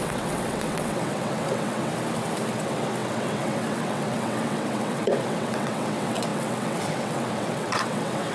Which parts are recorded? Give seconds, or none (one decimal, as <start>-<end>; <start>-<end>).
1.9-2.5